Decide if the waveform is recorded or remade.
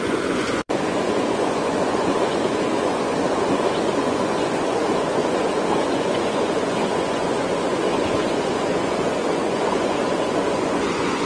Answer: remade